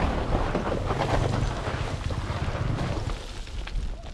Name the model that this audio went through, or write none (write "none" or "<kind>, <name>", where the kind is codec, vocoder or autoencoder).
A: none